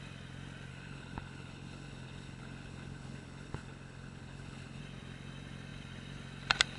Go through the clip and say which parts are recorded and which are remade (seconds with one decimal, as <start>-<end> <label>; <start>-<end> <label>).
0.0-0.7 recorded; 0.7-4.8 remade; 4.8-6.8 recorded